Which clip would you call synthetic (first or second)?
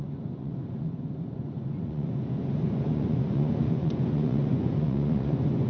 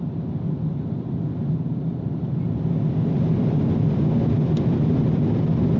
first